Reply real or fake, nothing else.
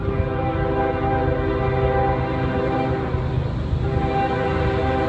real